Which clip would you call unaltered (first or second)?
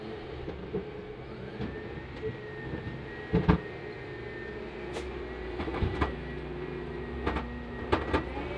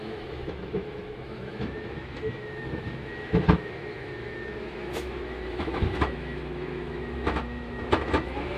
first